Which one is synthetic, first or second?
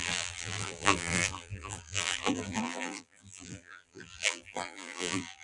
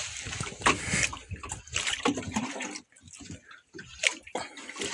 first